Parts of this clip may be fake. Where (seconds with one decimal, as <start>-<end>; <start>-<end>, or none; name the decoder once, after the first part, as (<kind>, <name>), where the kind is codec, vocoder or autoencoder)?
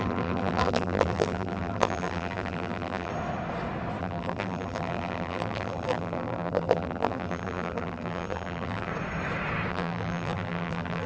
0.0-3.1 (vocoder, BigVGAN v2); 4.0-8.9; 9.7-11.1